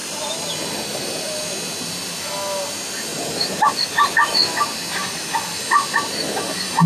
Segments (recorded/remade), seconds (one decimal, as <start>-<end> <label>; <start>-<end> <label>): 0.0-6.9 recorded

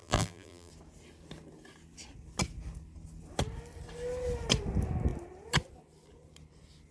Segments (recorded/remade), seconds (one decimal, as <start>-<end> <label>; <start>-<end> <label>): 0.0-0.7 remade; 0.7-6.9 recorded

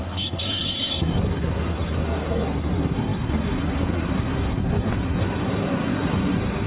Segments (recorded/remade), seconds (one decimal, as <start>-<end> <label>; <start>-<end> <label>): 0.0-6.7 remade

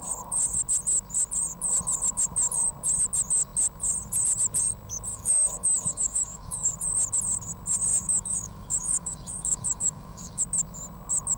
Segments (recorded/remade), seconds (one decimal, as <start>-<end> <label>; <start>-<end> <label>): 0.0-5.1 recorded; 5.1-6.7 remade; 6.7-7.9 recorded; 7.9-10.4 remade; 10.4-11.4 recorded

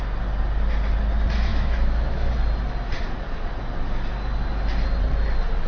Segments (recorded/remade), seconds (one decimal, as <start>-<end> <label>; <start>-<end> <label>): 0.0-1.5 recorded; 1.5-2.3 remade; 2.3-5.7 recorded

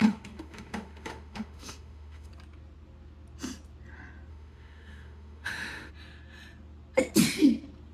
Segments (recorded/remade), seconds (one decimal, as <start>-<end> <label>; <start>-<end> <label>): 0.0-2.3 remade; 2.3-4.3 recorded; 4.3-5.9 remade; 5.9-7.9 recorded

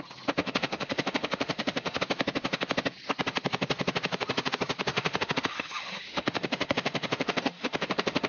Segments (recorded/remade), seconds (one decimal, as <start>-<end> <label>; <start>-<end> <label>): 0.0-0.4 recorded; 0.4-2.0 remade; 2.0-4.9 recorded; 4.9-8.3 remade